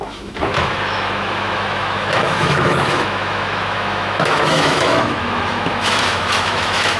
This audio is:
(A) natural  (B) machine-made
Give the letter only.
B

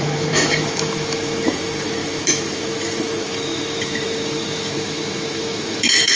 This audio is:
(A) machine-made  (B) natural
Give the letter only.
A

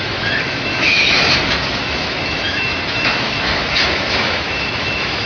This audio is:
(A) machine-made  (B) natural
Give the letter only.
A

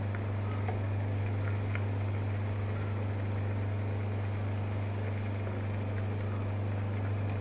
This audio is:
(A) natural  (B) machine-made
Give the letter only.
A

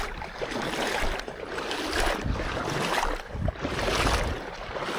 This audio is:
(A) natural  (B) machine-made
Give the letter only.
A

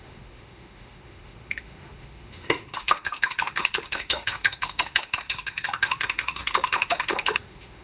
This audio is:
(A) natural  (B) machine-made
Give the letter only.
B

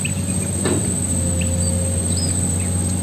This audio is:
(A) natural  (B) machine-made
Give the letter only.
A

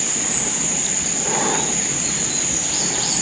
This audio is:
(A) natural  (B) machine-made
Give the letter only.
A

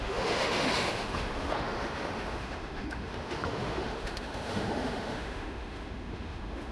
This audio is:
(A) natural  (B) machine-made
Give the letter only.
B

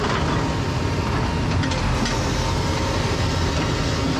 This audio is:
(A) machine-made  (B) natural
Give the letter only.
B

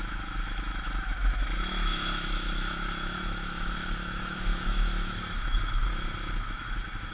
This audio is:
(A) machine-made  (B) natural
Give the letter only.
A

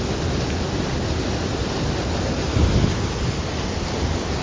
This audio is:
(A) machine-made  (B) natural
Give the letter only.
B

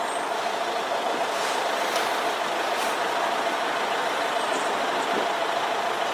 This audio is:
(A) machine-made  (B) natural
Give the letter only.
B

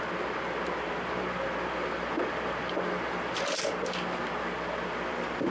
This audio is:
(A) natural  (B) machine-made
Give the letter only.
A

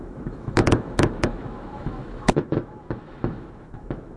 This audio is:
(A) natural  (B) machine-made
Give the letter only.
B